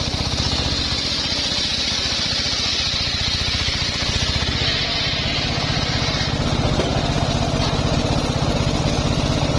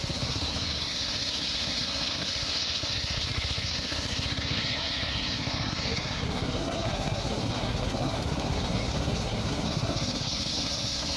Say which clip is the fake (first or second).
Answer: second